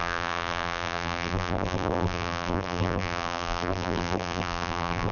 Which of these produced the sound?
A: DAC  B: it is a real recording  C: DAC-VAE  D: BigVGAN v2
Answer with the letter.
D